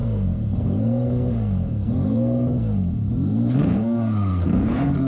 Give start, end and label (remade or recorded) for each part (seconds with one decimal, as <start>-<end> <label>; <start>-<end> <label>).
0.0-5.1 remade